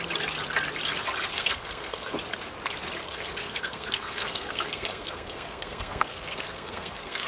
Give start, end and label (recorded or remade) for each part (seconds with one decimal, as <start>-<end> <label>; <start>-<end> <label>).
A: 0.0-1.3 recorded; 1.3-2.1 remade; 2.1-3.0 recorded; 3.0-7.3 remade